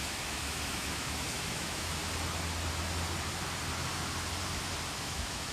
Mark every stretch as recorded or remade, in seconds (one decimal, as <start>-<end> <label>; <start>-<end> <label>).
0.0-2.0 remade; 2.0-5.0 recorded; 5.0-5.5 remade